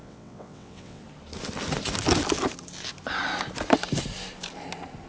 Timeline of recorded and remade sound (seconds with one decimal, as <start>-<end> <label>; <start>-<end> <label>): 0.0-1.0 remade; 1.0-5.1 recorded